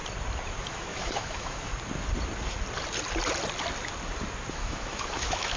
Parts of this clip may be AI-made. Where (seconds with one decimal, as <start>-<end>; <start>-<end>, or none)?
0.6-1.7; 4.5-5.6